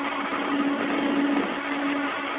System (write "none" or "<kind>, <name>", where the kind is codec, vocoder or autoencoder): none